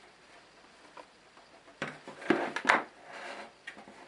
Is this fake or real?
fake